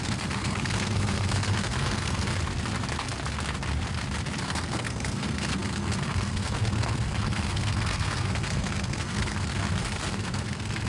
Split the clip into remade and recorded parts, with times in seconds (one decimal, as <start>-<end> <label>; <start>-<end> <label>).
0.0-2.3 remade; 2.3-4.4 recorded; 4.4-10.9 remade